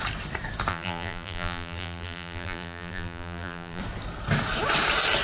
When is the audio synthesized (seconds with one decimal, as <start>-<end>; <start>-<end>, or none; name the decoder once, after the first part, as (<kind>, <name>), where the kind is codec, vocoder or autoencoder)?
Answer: 0.7-3.8 (vocoder, BigVGAN v2)